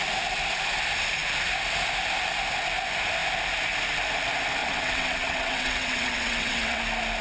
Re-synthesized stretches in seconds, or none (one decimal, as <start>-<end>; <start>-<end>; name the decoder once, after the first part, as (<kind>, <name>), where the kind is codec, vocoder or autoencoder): 4.6-6.8 (vocoder, WaveNeXt)

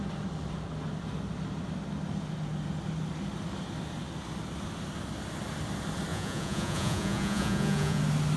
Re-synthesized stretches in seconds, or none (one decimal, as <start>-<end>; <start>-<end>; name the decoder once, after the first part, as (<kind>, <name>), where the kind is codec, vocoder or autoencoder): 6.1-8.0 (vocoder, Vocos)

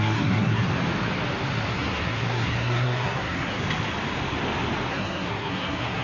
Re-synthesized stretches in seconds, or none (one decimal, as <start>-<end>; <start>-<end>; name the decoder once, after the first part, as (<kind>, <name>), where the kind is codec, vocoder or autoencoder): 0.0-0.7 (codec, SNAC); 1.7-3.6; 4.9-6.0

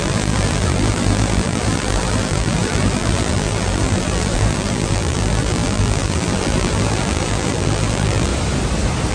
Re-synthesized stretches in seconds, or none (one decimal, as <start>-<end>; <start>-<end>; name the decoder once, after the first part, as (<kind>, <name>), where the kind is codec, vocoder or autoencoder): 0.0-8.3 (vocoder, BigVGAN v2)

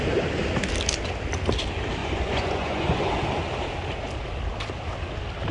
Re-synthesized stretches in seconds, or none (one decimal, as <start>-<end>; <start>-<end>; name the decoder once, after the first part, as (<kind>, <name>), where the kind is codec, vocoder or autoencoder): 2.0-3.1 (vocoder, Vocos)

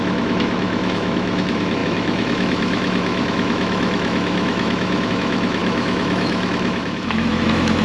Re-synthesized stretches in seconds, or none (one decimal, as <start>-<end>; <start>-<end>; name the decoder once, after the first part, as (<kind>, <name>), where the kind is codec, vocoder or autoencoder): 0.0-7.8 (autoencoder, DAC-VAE)

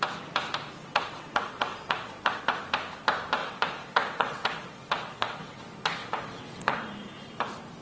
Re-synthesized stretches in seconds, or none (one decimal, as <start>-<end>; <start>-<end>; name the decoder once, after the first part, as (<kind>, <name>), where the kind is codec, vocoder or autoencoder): 0.8-2.4 (vocoder, WaveNeXt); 3.4-5.6; 6.0-6.9